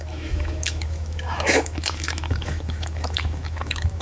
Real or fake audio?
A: fake